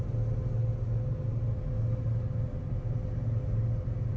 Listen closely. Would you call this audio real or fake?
real